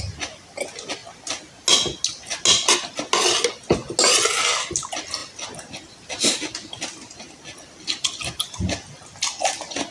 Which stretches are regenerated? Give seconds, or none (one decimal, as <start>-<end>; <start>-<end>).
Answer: none